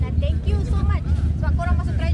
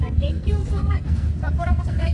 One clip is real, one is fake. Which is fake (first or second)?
second